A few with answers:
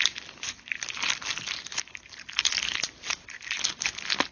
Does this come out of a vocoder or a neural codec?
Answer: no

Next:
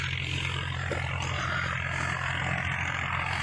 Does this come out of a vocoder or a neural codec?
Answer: no